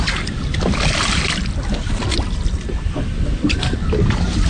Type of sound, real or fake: real